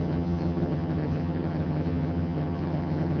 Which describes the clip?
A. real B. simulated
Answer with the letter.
B